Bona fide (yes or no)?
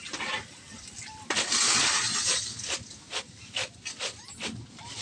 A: yes